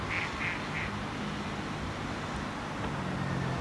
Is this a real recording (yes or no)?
yes